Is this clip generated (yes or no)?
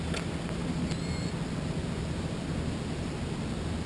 no